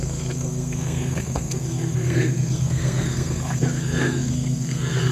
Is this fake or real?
fake